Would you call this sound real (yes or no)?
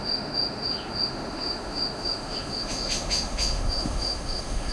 no